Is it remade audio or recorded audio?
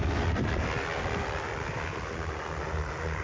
recorded